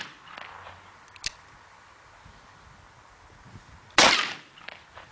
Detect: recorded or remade recorded